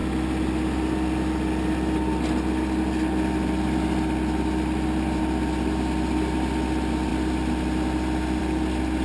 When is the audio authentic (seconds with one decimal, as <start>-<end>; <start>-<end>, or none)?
0.0-9.0